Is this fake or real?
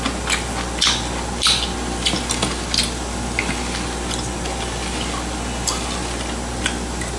real